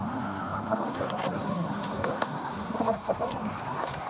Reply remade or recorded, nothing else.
remade